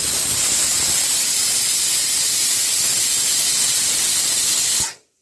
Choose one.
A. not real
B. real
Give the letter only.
B